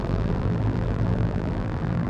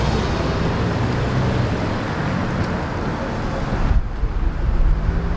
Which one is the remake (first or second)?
first